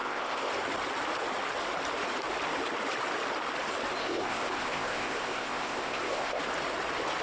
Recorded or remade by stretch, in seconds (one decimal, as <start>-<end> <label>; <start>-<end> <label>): 0.0-0.5 remade; 0.5-4.0 recorded; 4.0-6.4 remade; 6.4-7.2 recorded